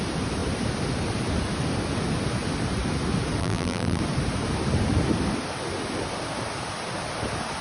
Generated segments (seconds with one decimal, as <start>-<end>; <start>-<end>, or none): 3.4-4.0